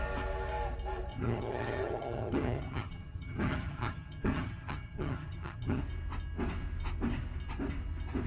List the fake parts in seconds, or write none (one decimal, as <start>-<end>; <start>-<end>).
1.1-5.8